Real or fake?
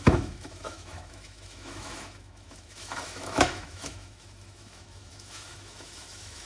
fake